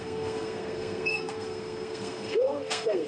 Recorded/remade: remade